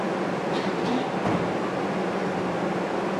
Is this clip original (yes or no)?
no